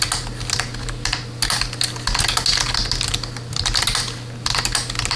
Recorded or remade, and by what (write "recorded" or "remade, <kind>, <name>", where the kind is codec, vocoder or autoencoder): recorded